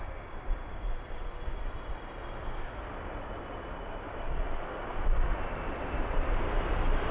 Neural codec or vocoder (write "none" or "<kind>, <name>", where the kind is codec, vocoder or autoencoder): none